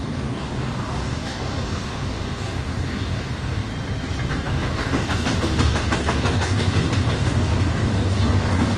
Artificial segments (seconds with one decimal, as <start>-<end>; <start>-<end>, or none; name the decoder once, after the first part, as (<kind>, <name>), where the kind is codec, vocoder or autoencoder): 0.0-3.7 (codec, DAC); 4.3-8.8